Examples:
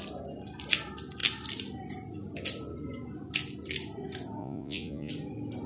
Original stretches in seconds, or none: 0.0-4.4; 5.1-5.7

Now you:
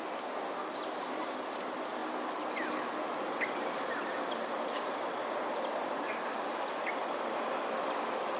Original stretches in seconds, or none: 0.0-8.4

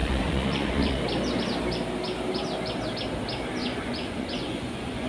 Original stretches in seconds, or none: 1.0-3.6

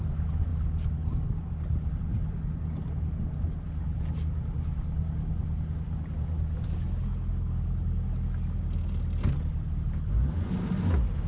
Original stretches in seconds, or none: 0.0-11.3

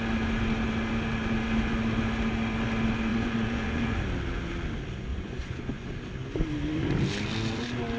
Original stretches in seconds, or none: 0.0-3.1; 4.0-5.1; 5.9-8.0

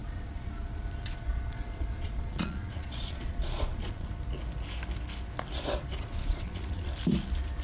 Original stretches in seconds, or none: 4.1-5.9; 6.9-7.6